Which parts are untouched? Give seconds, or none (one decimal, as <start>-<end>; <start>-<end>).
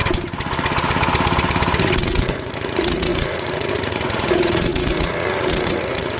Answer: 0.0-1.8